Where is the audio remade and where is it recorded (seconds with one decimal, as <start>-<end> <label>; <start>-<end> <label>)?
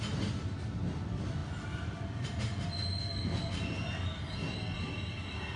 0.0-5.6 recorded